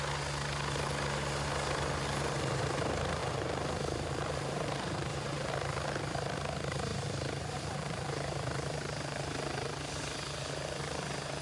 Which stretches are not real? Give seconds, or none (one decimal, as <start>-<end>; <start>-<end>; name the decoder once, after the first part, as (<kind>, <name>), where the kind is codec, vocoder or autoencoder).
3.2-5.5 (vocoder, BigVGAN v2); 6.9-9.3